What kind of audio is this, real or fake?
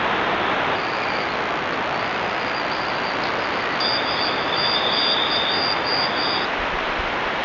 real